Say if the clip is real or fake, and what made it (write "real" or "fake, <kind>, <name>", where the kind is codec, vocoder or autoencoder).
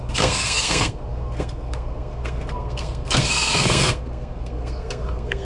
fake, codec, SNAC